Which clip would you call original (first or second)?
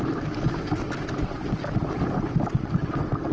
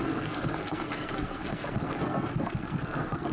first